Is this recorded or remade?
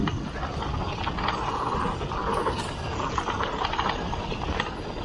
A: recorded